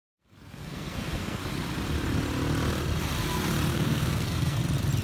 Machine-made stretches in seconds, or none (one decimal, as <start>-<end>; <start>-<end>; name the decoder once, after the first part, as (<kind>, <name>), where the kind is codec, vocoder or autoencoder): 0.0-1.4 (codec, SNAC); 3.7-4.6